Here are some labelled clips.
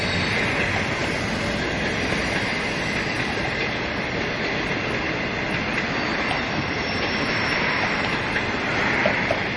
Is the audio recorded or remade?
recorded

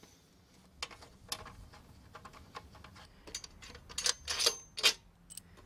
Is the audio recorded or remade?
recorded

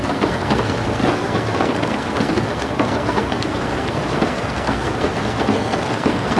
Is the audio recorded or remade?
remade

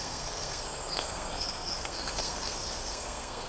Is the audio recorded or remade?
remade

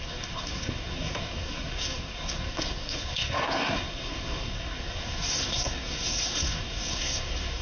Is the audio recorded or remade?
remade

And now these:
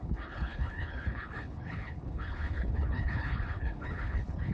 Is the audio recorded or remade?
remade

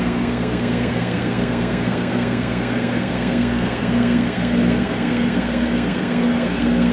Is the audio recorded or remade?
remade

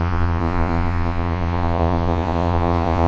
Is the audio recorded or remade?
remade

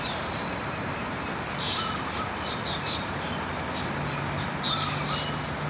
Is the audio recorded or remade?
recorded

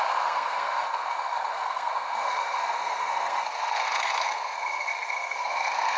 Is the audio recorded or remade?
remade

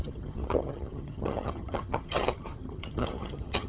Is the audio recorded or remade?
remade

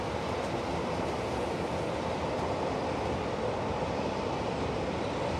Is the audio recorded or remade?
recorded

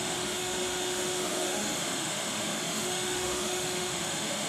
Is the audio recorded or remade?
remade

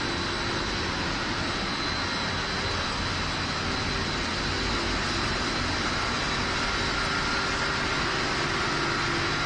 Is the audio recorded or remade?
recorded